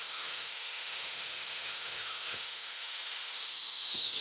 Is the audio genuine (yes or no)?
no